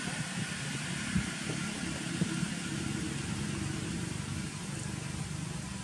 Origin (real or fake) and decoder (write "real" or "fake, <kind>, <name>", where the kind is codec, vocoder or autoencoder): real